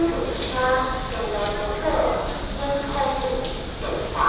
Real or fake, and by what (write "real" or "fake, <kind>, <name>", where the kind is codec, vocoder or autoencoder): real